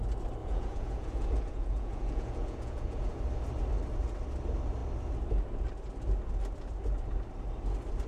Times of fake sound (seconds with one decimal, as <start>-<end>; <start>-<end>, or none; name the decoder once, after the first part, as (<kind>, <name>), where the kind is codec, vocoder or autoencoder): 0.4-3.2 (vocoder, Vocos)